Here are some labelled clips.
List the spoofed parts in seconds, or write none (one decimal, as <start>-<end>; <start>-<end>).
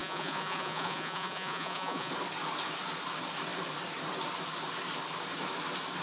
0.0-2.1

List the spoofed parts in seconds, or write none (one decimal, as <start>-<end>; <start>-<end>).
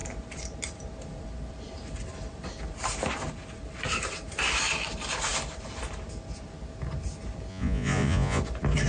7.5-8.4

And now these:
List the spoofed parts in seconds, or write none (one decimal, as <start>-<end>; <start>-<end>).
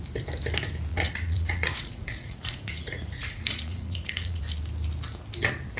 0.9-4.4